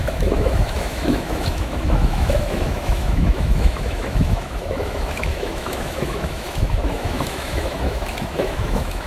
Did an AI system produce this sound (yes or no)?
yes